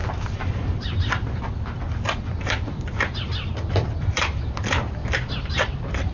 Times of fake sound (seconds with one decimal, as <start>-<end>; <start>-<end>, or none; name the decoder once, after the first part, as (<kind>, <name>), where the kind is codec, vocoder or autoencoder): 2.4-6.1 (vocoder, BigVGAN v2)